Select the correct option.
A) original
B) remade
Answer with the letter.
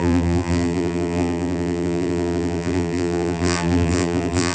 B